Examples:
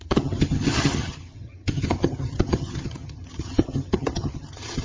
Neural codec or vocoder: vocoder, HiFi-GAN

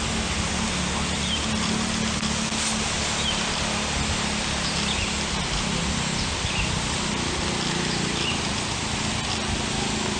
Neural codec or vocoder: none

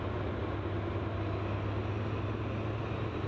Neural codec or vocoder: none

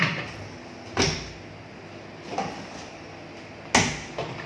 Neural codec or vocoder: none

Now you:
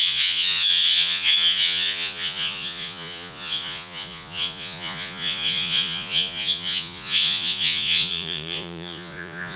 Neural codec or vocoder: vocoder, Vocos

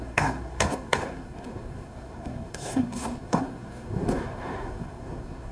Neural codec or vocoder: codec, SNAC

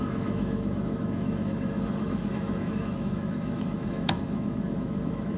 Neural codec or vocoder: autoencoder, DAC-VAE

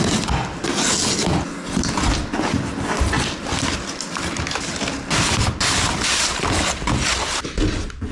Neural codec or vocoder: none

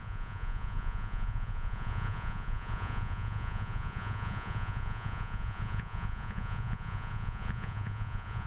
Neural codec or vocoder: vocoder, Vocos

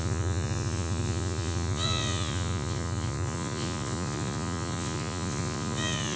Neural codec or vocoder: vocoder, Vocos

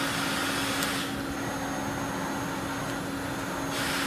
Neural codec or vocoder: none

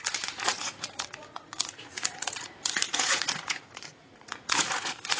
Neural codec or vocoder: vocoder, Vocos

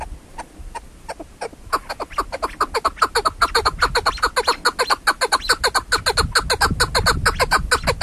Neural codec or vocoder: none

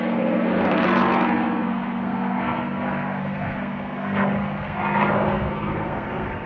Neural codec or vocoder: codec, SNAC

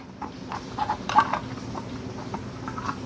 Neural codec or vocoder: none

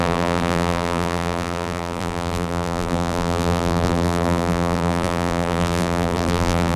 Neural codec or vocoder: vocoder, BigVGAN v2